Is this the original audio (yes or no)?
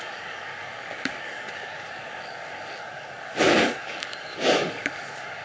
no